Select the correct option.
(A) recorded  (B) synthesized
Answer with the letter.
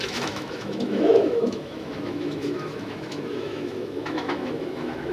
B